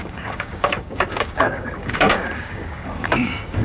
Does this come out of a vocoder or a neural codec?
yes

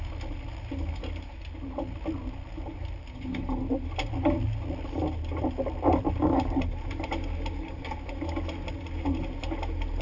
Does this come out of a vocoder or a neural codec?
no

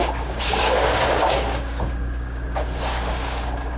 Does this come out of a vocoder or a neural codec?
yes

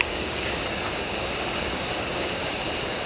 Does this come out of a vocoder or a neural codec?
yes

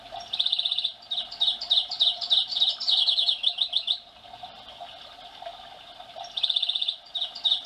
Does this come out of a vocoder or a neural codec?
no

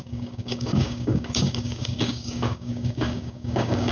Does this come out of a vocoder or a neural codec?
yes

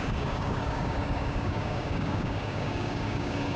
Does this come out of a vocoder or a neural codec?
yes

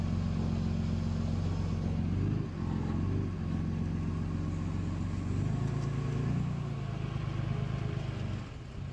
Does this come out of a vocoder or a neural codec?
no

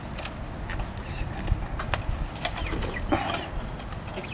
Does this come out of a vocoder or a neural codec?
no